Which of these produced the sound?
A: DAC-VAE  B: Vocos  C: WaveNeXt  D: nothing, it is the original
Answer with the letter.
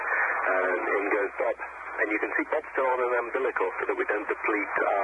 B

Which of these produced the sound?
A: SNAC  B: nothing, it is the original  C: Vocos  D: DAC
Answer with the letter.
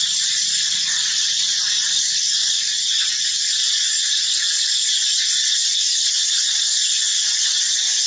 B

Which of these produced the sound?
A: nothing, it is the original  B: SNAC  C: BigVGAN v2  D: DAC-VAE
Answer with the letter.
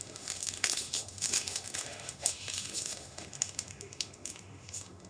D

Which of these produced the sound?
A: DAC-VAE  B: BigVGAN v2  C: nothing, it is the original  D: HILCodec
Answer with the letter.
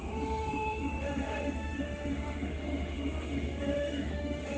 A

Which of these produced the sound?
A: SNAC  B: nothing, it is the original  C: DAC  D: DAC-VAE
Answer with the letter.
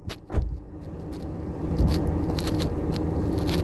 B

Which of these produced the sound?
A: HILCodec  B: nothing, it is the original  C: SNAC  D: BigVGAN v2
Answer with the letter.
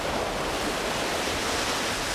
B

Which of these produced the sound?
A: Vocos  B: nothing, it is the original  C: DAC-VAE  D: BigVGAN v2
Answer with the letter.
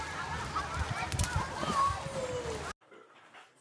B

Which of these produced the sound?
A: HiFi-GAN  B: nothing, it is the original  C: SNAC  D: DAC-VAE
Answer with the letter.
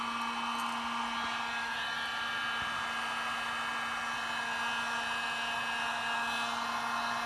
B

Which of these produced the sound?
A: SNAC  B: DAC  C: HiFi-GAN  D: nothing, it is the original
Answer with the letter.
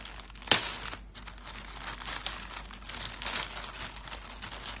D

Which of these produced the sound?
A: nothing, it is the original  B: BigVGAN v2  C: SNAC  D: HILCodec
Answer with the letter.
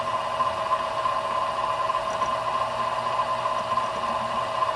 A